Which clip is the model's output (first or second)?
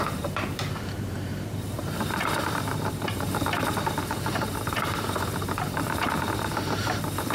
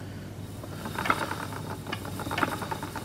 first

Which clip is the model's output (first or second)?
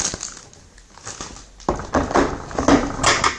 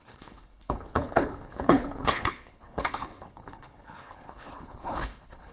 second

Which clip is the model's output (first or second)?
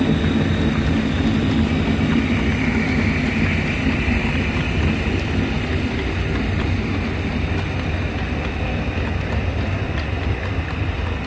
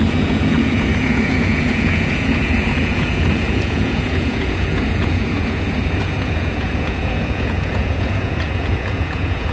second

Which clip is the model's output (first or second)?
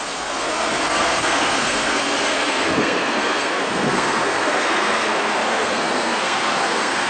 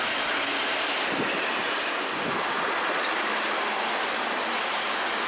first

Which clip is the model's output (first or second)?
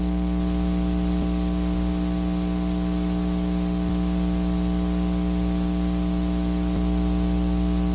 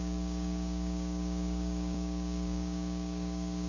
second